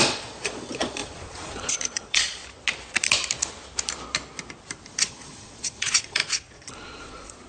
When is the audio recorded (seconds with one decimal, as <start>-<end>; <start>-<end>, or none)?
2.4-5.0